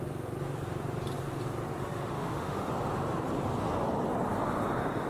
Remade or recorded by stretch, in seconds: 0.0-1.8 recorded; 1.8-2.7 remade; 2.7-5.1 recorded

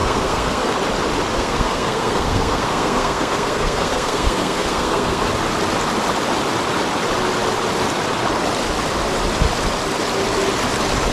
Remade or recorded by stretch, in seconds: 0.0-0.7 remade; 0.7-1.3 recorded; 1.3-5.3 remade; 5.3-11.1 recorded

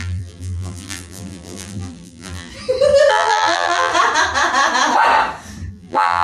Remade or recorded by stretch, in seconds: 0.0-2.5 remade; 2.5-3.1 recorded; 3.1-3.9 remade; 3.9-5.7 recorded; 5.7-6.2 remade